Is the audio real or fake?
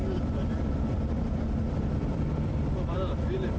fake